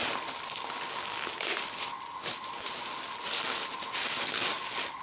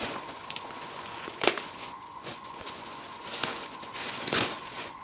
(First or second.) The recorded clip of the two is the first